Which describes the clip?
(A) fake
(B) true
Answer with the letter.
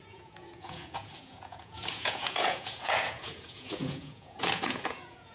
A